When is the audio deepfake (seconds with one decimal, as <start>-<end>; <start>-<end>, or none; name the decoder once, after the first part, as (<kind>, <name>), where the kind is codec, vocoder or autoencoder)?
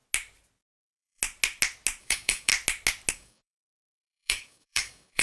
0.7-1.2 (codec, DAC); 2.0-2.5; 3.1-5.2